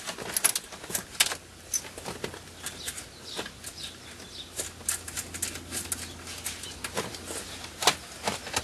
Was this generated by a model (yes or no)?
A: no